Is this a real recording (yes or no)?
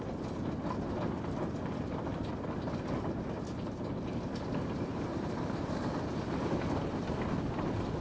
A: yes